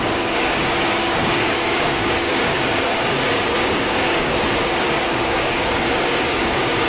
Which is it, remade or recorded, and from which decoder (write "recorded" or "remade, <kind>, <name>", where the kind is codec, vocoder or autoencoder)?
remade, codec, DAC